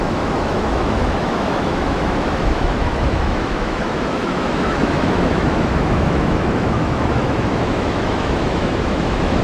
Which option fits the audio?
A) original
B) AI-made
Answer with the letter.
B